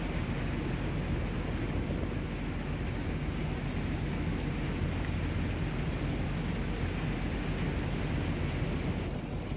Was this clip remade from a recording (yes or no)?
no